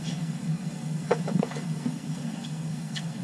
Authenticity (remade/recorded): remade